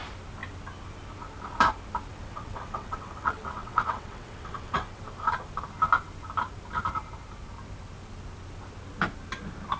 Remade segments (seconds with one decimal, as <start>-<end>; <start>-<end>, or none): 2.1-5.0